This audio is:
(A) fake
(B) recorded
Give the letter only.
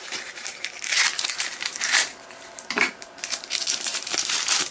A